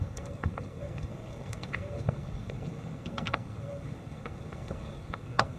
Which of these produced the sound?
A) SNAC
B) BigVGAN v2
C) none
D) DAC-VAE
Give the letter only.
A